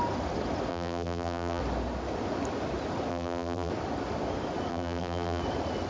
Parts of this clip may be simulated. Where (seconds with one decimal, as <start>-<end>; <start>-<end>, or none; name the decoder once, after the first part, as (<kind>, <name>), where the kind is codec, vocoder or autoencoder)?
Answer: 0.7-1.6 (vocoder, BigVGAN v2); 3.1-3.7; 4.7-5.4